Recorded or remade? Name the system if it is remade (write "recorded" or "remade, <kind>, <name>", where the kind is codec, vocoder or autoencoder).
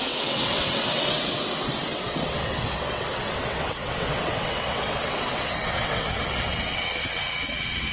remade, vocoder, WaveNeXt